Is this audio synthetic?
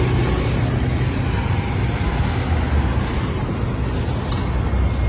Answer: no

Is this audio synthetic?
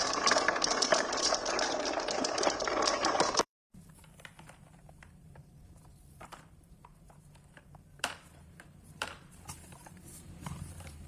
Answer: yes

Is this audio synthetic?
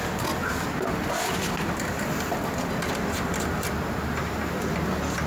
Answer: no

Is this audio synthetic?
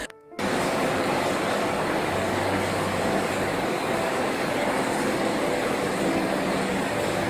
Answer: yes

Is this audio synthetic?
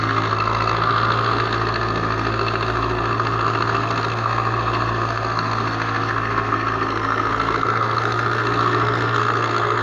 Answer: yes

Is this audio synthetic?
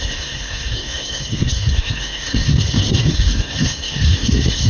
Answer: yes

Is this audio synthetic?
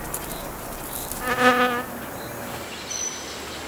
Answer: no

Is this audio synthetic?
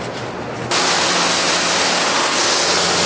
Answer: no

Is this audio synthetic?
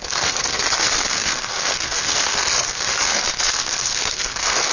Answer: yes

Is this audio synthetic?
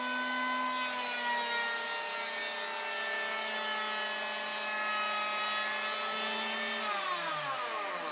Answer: no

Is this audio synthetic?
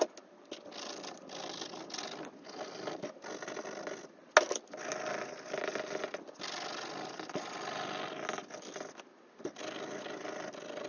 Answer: no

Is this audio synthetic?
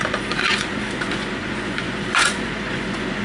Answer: yes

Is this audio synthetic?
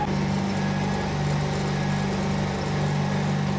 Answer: no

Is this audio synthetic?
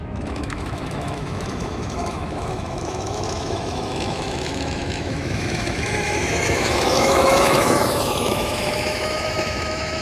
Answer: yes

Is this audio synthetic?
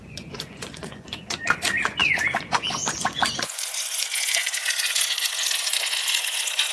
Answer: yes